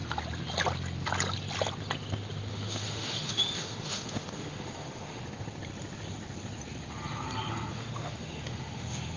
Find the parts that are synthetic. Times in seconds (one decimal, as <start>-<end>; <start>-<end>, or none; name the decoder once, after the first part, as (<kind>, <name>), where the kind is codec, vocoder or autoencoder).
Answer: 2.5-5.2 (autoencoder, DAC-VAE); 7.7-9.2